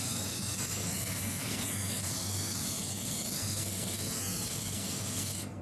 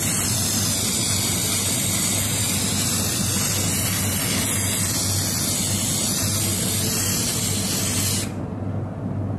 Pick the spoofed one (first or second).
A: first